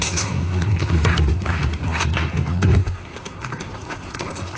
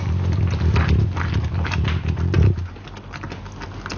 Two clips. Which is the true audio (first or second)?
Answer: second